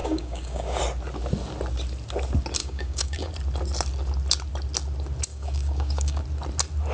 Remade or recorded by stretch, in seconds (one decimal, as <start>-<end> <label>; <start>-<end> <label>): 0.0-0.8 remade; 0.8-2.6 recorded; 2.6-3.3 remade; 3.3-5.3 recorded; 5.3-6.2 remade; 6.2-6.9 recorded